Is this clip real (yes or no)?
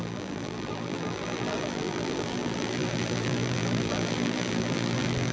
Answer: no